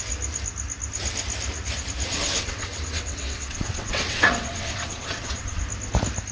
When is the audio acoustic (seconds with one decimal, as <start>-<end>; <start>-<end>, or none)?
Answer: 0.0-2.1; 5.6-6.3